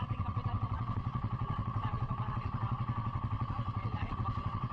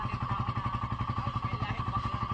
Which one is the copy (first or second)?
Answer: first